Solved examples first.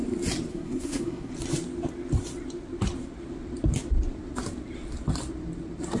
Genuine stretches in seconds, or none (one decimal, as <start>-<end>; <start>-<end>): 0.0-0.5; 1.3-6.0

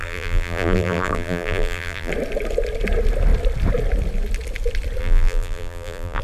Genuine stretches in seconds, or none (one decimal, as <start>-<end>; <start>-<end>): 2.1-5.0

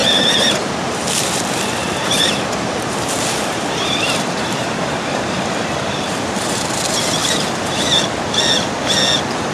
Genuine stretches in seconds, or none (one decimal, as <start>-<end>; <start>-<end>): 1.0-1.8; 6.8-7.2; 8.3-9.5

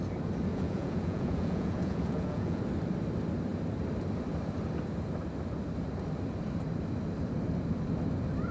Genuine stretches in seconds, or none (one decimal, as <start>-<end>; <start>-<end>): 0.0-0.5; 2.6-8.5

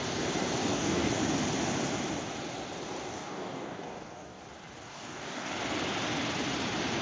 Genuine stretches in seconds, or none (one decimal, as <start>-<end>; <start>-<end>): 0.0-0.6; 1.1-3.0; 4.4-4.9; 5.5-7.0

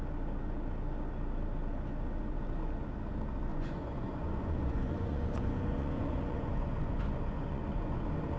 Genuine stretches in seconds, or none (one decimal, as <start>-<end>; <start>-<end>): 0.0-3.5; 8.0-8.4

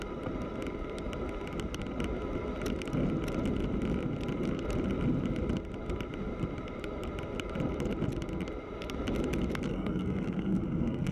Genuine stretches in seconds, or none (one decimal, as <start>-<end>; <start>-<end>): 0.0-9.7

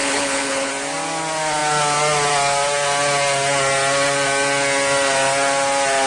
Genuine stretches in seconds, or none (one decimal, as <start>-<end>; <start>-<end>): 0.7-6.1